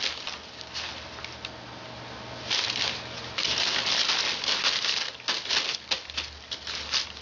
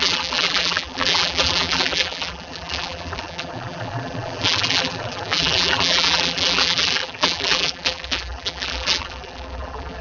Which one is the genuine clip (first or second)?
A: first